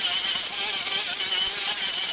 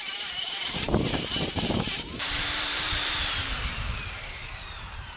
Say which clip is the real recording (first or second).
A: first